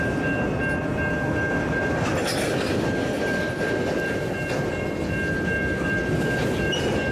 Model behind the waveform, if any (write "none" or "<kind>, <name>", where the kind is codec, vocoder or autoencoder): none